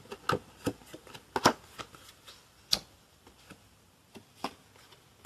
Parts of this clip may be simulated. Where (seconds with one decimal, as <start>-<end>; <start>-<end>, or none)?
none

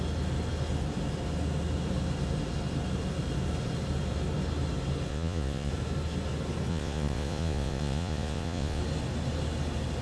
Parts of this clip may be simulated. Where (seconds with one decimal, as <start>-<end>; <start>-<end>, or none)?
5.1-5.7; 6.7-8.8

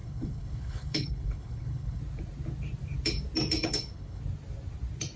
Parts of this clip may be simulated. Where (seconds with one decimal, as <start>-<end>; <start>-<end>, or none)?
0.0-2.0; 3.6-4.2

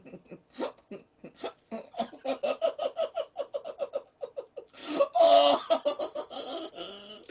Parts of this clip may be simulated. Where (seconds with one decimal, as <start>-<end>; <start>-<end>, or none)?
none

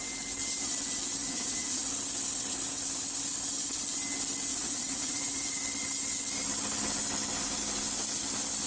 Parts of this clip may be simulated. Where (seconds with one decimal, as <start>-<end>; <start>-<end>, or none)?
1.2-1.9; 4.5-5.5

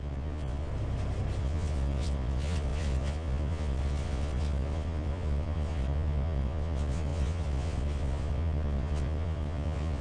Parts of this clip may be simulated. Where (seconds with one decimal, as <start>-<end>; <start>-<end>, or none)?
0.0-0.7; 1.4-10.0